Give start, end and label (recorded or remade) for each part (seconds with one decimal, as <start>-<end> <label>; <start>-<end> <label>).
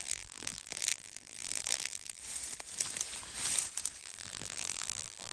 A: 0.0-2.2 remade; 2.2-4.0 recorded; 4.0-5.3 remade